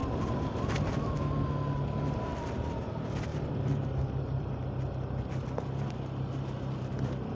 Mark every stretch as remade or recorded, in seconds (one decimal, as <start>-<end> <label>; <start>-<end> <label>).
0.0-1.2 remade; 1.2-2.3 recorded; 2.3-2.9 remade; 2.9-3.3 recorded; 3.3-4.5 remade; 4.5-7.3 recorded